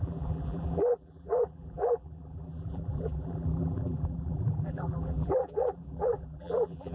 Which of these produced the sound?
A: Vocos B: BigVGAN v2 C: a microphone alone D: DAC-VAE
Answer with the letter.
B